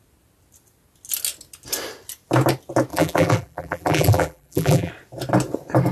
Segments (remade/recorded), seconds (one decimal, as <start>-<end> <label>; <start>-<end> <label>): 0.0-2.9 recorded; 2.9-4.9 remade; 4.9-5.9 recorded